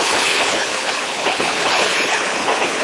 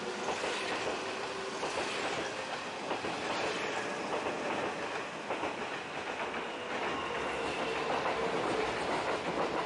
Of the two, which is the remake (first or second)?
first